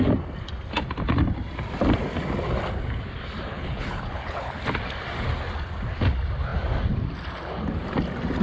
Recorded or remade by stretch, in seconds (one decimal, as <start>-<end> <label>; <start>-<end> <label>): 0.0-3.5 recorded; 3.5-4.6 remade; 4.6-8.4 recorded